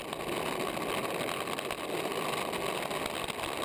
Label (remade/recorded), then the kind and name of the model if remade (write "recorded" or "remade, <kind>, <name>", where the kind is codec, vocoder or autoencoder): recorded